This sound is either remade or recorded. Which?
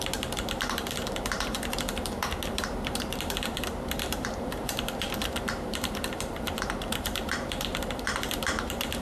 remade